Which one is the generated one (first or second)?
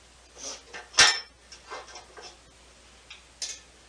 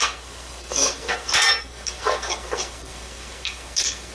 second